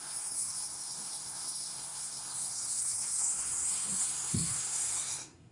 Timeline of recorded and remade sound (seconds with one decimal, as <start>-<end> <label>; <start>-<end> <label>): 0.0-5.5 remade